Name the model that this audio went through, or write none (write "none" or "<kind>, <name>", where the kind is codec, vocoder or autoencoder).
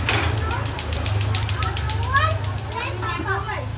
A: none